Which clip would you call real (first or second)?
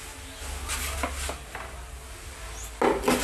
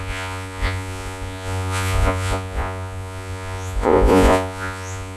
first